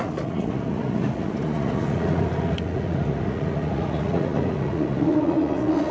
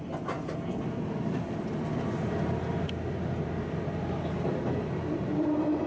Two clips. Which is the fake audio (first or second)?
first